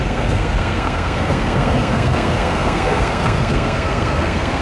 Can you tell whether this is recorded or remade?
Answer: remade